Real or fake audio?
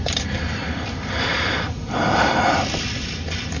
real